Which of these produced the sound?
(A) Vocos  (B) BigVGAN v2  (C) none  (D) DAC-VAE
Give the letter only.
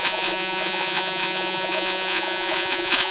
A